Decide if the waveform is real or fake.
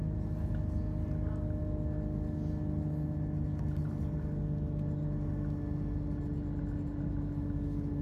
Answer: real